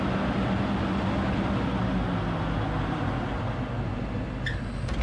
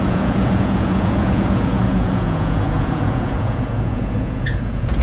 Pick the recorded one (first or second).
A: first